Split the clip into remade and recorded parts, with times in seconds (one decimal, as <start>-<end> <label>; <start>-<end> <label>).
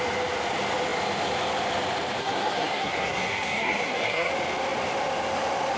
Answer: 0.0-2.2 recorded; 2.2-4.3 remade; 4.3-5.8 recorded